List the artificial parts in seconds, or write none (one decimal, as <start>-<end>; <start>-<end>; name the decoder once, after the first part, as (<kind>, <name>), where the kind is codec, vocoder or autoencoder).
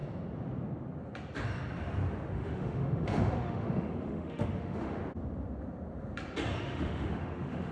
2.3-5.0 (autoencoder, DAC-VAE); 6.6-7.7